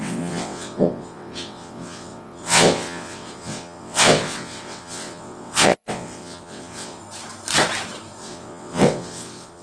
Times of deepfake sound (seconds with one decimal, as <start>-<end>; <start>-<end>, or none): 0.0-7.0; 8.2-9.6